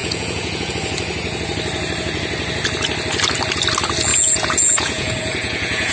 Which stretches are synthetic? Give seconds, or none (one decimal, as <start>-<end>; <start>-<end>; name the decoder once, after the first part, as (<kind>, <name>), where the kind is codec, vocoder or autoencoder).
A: 0.0-0.7 (vocoder, Vocos); 4.1-5.9